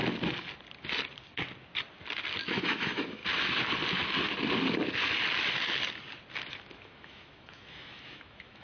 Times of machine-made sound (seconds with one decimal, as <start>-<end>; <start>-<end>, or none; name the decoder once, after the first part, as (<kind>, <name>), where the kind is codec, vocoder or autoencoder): 2.6-3.2 (autoencoder, DAC-VAE); 6.5-8.6